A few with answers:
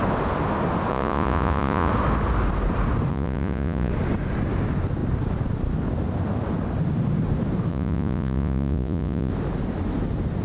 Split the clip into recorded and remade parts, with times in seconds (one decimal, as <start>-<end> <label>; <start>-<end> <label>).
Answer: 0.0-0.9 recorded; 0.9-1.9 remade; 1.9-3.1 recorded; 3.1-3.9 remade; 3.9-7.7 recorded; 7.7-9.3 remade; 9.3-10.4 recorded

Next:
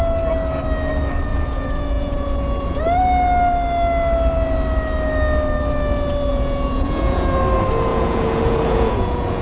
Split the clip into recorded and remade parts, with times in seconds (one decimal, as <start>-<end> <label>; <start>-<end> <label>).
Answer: 0.0-1.3 recorded; 1.3-2.8 remade; 2.8-6.3 recorded; 6.3-7.4 remade; 7.4-7.9 recorded; 7.9-9.4 remade

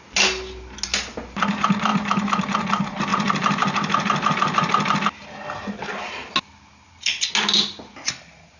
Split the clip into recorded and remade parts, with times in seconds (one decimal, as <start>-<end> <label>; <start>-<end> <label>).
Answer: 0.0-8.6 recorded

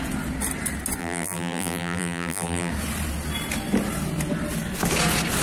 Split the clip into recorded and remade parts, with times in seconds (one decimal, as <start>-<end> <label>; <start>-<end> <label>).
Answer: 0.0-1.0 recorded; 1.0-2.7 remade; 2.7-5.4 recorded

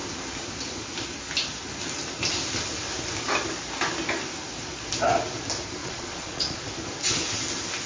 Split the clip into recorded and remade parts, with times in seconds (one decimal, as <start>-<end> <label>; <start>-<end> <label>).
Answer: 0.0-5.8 recorded; 5.8-6.7 remade; 6.7-7.9 recorded

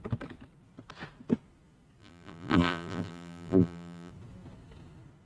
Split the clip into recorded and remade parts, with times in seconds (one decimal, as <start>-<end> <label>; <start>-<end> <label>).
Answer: 0.0-2.0 recorded; 2.0-4.1 remade; 4.1-5.3 recorded

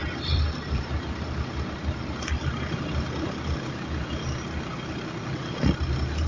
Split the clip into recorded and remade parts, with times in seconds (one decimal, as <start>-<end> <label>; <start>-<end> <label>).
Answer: 0.0-3.0 remade; 3.0-6.3 recorded